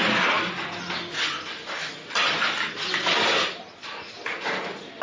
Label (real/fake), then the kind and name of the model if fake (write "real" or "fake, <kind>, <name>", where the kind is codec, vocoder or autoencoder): real